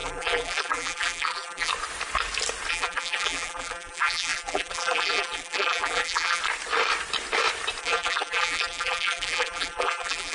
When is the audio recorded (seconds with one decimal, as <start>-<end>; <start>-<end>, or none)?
1.7-2.7; 6.4-7.8